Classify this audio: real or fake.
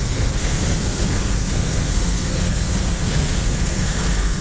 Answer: fake